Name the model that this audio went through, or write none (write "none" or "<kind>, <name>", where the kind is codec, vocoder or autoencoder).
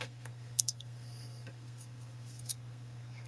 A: codec, SNAC